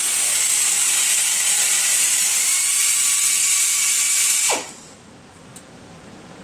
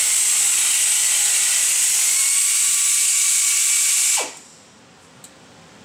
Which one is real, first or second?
second